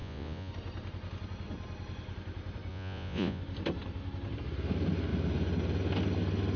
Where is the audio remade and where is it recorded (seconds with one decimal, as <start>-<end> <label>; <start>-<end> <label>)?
0.0-0.5 remade; 0.5-2.7 recorded; 2.7-3.4 remade; 3.4-6.6 recorded